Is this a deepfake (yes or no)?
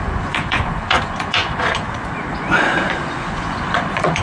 yes